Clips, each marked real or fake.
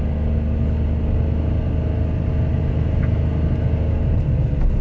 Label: real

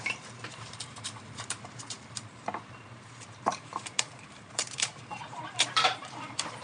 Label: fake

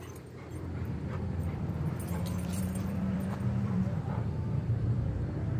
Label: fake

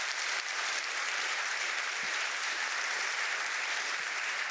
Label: fake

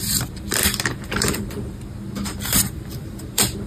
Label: fake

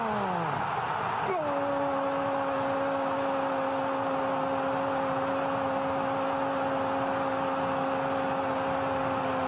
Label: real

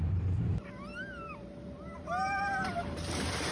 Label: fake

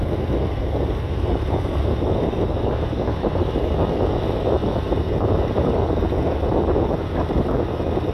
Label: real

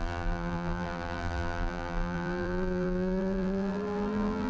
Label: fake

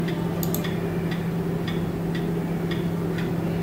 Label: real